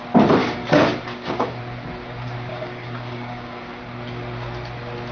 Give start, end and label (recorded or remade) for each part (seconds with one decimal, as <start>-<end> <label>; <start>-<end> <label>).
0.0-0.4 recorded; 0.4-1.6 remade; 1.6-2.5 recorded; 2.5-3.8 remade; 3.8-5.1 recorded